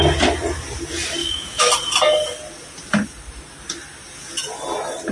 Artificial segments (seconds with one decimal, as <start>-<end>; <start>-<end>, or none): 1.2-1.7